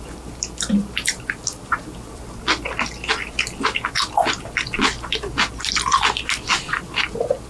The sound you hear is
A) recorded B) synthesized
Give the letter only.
A